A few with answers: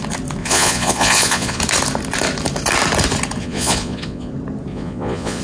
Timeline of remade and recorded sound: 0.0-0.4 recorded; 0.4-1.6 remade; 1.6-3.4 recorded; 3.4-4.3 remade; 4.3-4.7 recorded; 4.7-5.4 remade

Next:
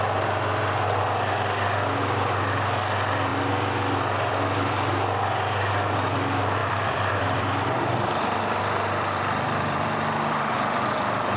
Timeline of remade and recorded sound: 0.0-6.6 recorded; 6.6-11.4 remade